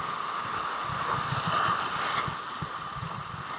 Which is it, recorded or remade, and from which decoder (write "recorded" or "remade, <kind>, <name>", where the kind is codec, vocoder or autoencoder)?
recorded